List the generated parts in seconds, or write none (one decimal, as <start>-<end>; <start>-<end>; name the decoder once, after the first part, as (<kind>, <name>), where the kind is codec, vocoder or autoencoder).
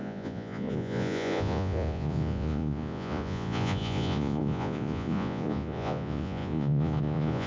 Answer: 0.0-7.5 (vocoder, Vocos)